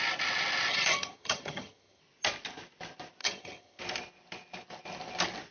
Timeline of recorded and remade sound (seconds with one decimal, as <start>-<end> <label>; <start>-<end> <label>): 0.0-0.7 recorded; 0.7-2.0 remade; 2.0-3.2 recorded; 3.2-3.8 remade; 3.8-5.5 recorded